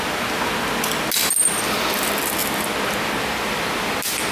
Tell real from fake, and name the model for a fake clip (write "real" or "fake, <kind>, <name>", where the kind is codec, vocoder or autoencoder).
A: real